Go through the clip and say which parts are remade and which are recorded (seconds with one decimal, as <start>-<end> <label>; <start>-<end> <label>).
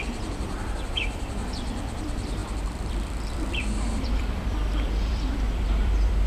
0.0-6.3 remade